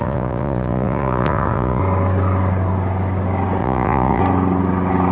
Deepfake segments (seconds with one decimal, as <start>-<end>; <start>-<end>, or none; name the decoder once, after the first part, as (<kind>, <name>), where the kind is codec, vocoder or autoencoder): 0.0-1.8 (vocoder, Vocos); 3.6-4.2